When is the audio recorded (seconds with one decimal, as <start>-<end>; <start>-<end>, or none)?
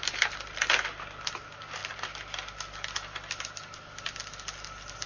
0.0-5.1